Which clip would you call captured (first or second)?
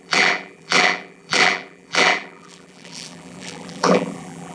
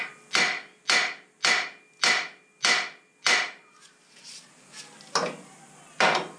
second